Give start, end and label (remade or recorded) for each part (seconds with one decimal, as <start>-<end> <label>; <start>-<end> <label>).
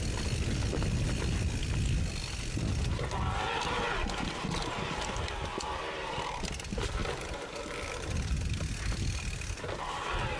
0.0-10.4 recorded